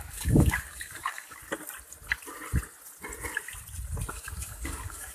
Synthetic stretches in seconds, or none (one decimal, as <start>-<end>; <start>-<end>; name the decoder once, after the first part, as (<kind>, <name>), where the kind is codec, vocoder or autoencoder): 0.0-1.4 (codec, DAC); 4.1-5.1